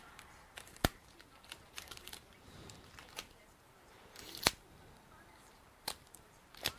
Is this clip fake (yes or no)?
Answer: yes